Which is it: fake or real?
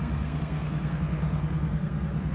fake